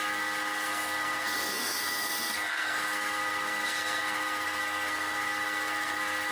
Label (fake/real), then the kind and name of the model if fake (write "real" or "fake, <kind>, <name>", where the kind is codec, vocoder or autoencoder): fake, codec, SNAC